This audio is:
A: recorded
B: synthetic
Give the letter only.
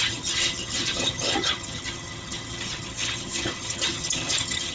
B